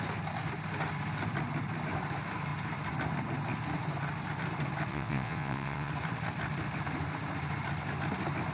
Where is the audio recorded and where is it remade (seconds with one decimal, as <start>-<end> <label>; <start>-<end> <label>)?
0.0-4.9 recorded; 4.9-5.9 remade; 5.9-8.5 recorded

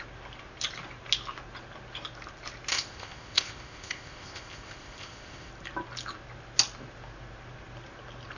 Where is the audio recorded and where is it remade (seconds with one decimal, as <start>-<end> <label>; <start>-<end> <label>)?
0.0-2.7 recorded; 2.7-5.5 remade; 5.5-8.4 recorded